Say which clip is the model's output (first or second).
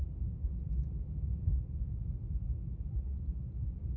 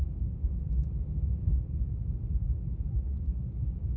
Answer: second